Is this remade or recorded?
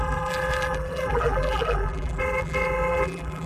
remade